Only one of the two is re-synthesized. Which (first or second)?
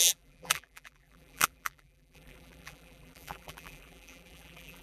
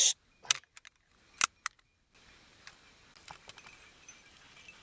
first